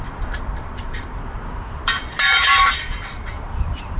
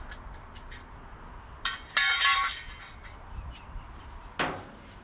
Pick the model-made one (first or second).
first